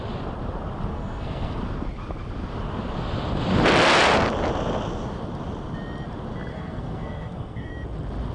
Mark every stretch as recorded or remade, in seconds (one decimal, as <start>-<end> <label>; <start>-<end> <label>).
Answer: 0.0-0.9 recorded; 0.9-1.6 remade; 1.6-6.5 recorded; 6.5-7.7 remade; 7.7-8.3 recorded

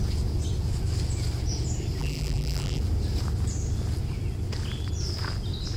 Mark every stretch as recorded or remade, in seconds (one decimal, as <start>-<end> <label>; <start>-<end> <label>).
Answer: 0.0-2.0 recorded; 2.0-2.8 remade; 2.8-5.8 recorded